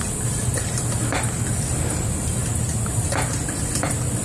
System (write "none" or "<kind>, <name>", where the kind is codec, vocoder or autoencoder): none